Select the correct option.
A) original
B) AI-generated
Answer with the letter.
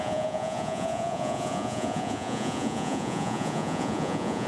B